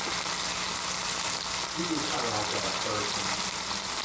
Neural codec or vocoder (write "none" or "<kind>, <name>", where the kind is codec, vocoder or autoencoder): none